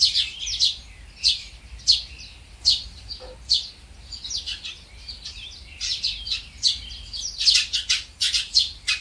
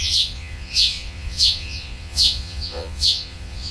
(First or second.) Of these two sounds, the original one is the first